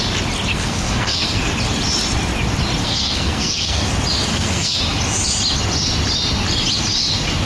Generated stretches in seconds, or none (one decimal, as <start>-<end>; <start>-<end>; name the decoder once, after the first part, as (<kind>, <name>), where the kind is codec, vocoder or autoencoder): 0.5-1.4 (codec, SNAC); 2.8-3.9; 4.3-4.8